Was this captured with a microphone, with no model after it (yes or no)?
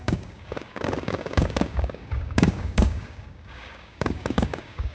no